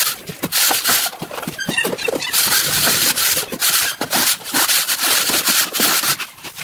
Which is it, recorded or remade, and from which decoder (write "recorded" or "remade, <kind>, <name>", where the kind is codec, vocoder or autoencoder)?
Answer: remade, vocoder, BigVGAN v2